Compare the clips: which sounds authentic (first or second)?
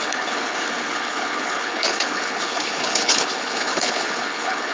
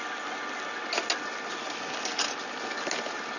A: second